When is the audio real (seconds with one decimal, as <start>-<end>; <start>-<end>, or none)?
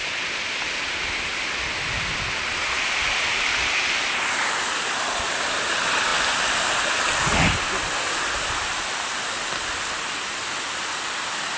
0.0-11.6